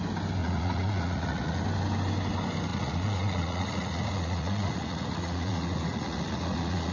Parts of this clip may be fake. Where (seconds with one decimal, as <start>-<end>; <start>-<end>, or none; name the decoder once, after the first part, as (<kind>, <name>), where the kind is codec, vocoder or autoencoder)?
0.4-1.6 (vocoder, Vocos); 2.7-6.9